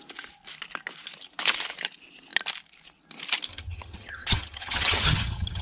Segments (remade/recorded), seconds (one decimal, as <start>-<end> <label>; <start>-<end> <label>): 0.0-3.5 recorded; 3.5-5.6 remade